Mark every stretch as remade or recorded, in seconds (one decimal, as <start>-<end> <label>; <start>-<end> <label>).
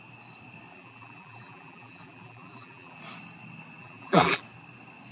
0.0-0.7 recorded; 0.7-3.0 remade; 3.0-3.8 recorded; 3.8-4.4 remade; 4.4-5.1 recorded